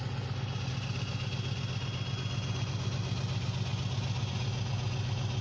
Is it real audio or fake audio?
real